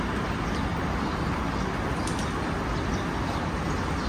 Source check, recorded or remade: recorded